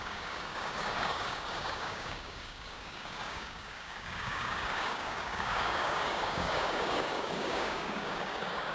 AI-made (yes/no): yes